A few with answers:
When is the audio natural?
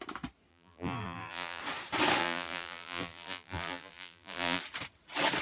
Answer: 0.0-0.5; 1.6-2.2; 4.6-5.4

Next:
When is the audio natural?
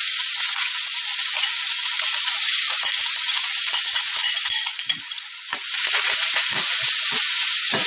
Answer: none